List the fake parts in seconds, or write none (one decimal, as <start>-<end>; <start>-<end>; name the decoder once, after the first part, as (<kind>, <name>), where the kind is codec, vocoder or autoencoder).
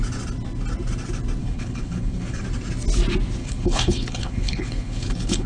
1.4-2.4 (codec, HILCodec); 3.4-5.5